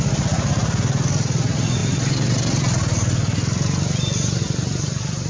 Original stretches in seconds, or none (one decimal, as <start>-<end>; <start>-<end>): 0.0-5.3